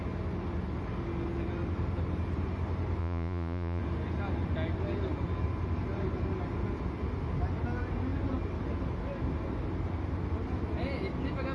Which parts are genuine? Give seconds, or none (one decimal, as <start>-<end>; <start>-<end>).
0.0-3.0; 3.8-11.5